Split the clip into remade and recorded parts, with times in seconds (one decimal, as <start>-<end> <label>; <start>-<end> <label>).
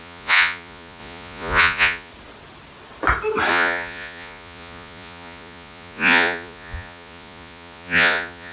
0.0-2.1 remade; 2.1-3.5 recorded; 3.5-8.5 remade